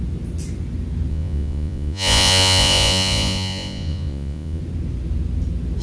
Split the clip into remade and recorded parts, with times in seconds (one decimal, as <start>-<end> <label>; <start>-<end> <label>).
0.0-1.1 recorded; 1.1-4.6 remade; 4.6-5.8 recorded